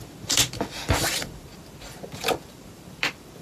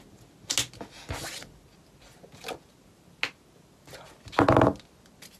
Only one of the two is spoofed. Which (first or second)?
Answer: first